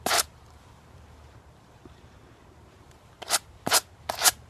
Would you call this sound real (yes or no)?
no